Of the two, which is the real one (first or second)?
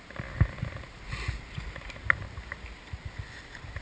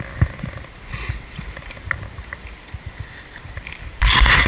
first